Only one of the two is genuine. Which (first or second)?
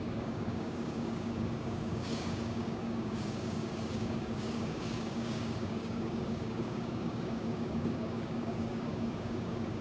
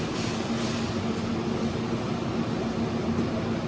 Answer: second